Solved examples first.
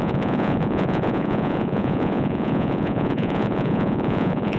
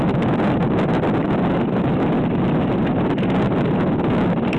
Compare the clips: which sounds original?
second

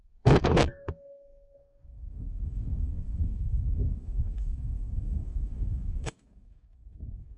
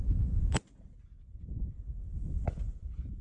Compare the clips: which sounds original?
second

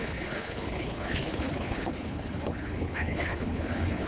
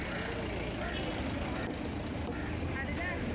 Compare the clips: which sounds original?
second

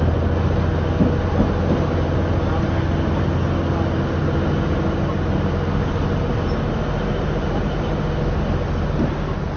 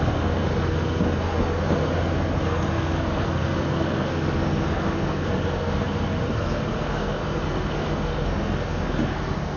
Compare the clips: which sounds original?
first